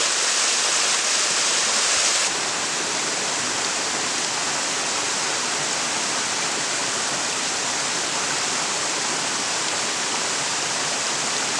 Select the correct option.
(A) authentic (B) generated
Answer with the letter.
A